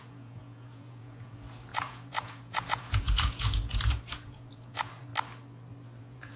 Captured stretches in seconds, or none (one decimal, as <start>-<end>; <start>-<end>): 5.1-6.0